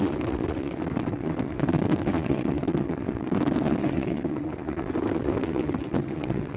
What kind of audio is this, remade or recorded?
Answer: remade